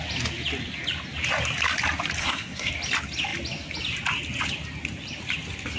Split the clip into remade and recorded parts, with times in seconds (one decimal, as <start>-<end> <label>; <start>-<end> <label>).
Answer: 0.0-2.2 recorded; 2.2-2.7 remade; 2.7-5.8 recorded